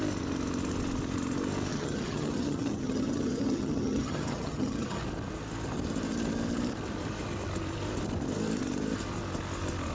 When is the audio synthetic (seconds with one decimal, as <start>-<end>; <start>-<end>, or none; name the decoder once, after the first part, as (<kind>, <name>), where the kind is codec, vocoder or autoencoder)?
1.7-5.0 (vocoder, HiFi-GAN)